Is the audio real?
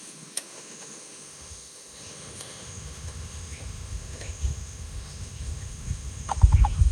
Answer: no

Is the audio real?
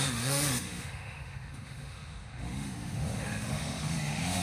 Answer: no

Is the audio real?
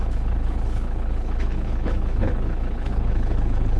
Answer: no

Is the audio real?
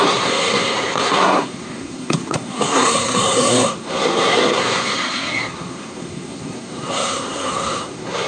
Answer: no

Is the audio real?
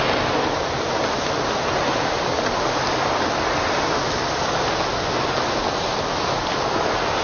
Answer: yes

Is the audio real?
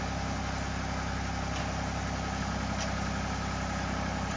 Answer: yes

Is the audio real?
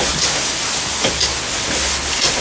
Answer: yes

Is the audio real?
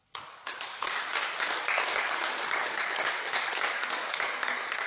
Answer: no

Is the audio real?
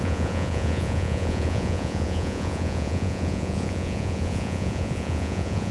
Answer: no